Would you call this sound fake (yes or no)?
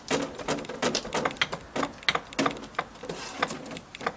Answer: no